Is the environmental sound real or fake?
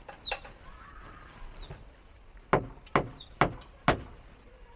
real